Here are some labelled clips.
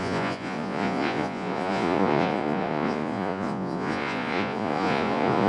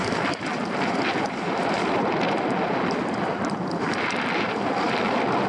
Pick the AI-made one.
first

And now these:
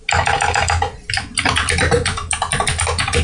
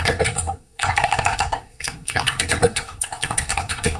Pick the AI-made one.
second